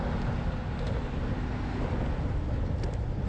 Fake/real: real